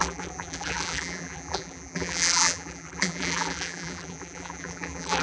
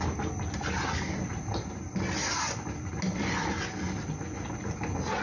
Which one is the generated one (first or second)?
first